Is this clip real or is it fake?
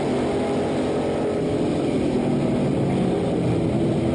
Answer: real